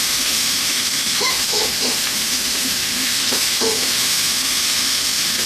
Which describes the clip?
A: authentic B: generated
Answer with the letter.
B